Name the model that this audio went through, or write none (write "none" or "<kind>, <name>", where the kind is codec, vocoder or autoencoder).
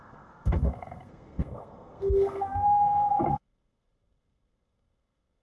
codec, SNAC